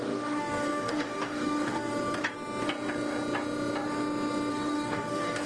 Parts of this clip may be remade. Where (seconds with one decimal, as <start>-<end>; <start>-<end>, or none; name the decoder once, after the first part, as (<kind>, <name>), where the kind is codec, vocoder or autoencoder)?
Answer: 0.0-1.9 (codec, DAC); 4.5-5.5